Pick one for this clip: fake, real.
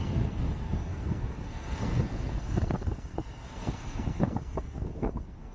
fake